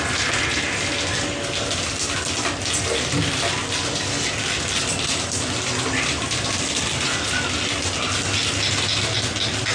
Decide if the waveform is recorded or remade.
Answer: recorded